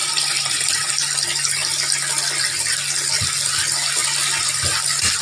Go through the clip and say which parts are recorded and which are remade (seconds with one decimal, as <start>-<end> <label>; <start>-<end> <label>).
0.0-0.9 remade; 0.9-5.2 recorded